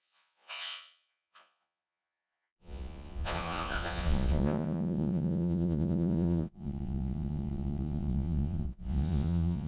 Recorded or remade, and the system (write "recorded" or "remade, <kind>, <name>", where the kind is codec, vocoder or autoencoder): remade, vocoder, Vocos